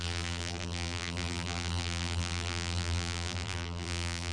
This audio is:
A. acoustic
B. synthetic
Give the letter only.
B